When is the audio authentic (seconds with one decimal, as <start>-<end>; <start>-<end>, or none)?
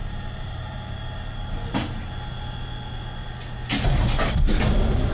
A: 2.1-5.1